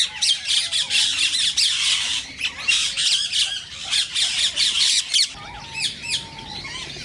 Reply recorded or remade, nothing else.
recorded